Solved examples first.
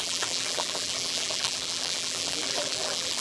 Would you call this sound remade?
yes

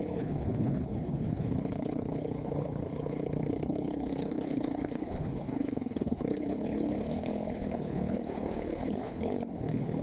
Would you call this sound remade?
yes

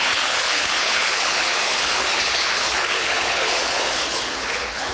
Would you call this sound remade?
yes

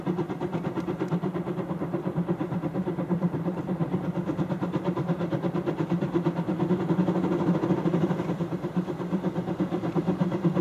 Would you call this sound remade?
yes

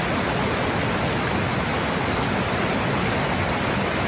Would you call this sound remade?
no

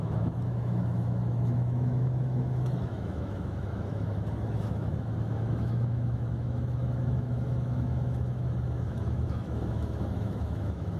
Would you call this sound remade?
yes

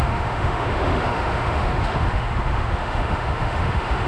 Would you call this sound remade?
yes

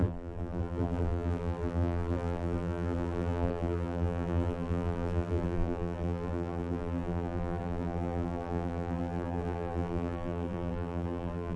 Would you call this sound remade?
yes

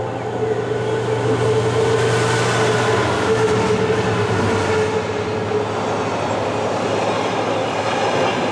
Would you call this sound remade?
no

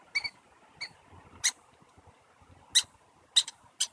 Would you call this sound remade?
no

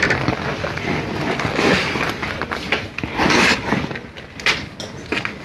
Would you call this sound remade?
no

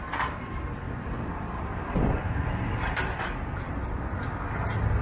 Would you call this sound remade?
no